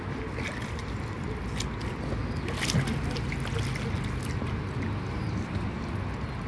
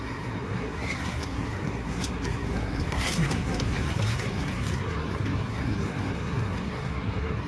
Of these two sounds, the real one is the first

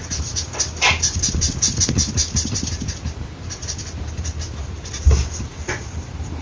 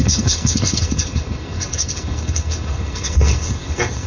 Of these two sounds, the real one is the first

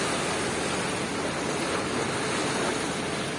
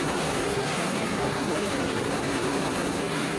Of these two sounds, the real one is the first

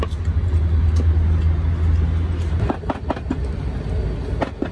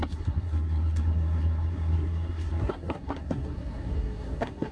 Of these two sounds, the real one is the first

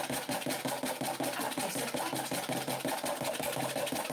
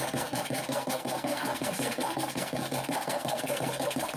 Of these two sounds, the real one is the first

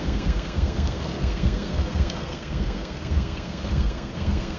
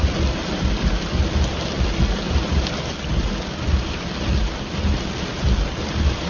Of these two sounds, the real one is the second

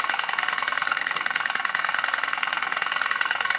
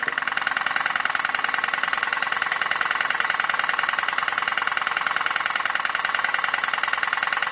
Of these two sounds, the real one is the second